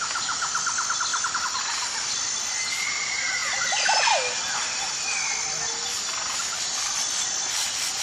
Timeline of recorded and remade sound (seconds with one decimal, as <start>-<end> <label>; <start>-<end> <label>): 0.0-8.0 recorded